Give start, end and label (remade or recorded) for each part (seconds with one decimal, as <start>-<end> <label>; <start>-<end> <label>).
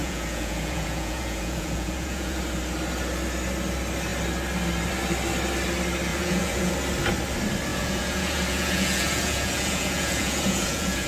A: 0.0-2.4 remade; 2.4-6.1 recorded; 6.1-6.7 remade; 6.7-7.7 recorded; 7.7-11.1 remade